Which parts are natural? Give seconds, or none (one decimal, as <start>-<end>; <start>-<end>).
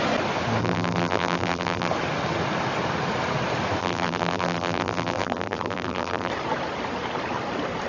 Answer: 0.0-0.6; 1.9-3.8; 6.3-7.9